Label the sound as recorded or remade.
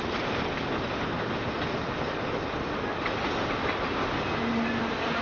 recorded